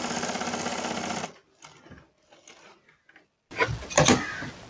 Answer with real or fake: real